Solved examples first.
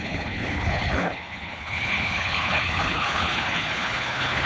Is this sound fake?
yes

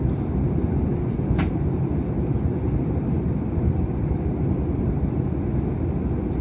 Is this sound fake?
no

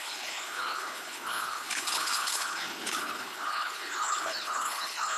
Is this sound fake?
yes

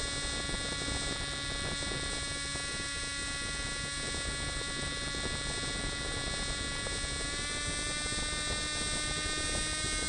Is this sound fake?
no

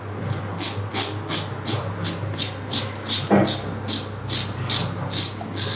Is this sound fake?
no